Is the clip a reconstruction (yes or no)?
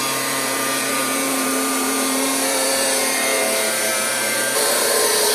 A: yes